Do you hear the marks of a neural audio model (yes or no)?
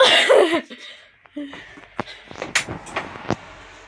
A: no